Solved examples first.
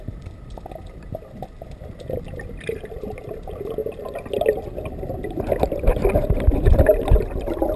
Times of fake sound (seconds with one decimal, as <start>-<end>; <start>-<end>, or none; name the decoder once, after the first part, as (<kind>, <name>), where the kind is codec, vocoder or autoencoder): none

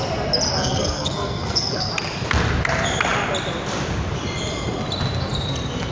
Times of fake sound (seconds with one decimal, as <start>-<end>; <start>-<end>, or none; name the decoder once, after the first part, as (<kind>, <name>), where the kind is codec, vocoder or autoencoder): 0.5-1.9 (codec, SNAC)

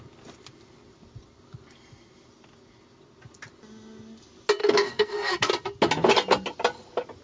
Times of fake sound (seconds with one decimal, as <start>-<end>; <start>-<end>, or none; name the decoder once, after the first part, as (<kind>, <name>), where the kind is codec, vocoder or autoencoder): 4.6-5.5 (codec, SNAC)